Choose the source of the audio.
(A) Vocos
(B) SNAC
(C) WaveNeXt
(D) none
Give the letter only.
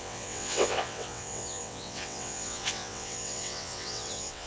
C